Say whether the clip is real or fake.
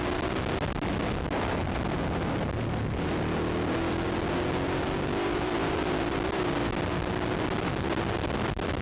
real